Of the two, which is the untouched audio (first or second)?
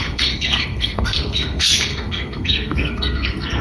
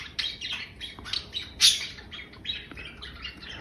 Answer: second